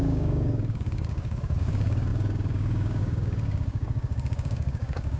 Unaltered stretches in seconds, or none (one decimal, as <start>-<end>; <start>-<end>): none